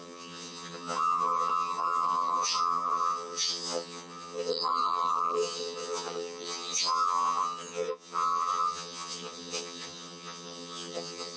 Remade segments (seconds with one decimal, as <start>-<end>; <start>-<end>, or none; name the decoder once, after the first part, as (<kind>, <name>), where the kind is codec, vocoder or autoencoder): 0.0-11.4 (vocoder, HiFi-GAN)

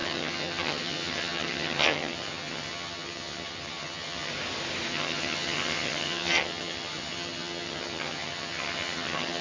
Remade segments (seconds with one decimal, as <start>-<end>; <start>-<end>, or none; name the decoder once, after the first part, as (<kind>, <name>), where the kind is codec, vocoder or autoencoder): 0.0-4.3 (vocoder, HiFi-GAN); 4.9-9.4

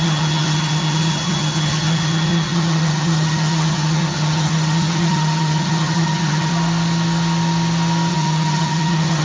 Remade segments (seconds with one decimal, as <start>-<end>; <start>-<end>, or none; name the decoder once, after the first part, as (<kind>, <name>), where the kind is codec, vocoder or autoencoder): 0.0-6.5 (vocoder, HiFi-GAN); 8.1-9.2

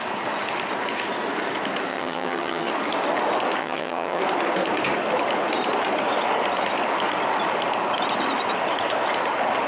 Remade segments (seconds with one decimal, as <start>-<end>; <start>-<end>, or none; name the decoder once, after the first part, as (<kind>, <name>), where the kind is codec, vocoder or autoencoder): 1.9-2.7 (vocoder, HiFi-GAN); 3.6-4.2